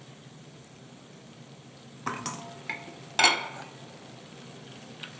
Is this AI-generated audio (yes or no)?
no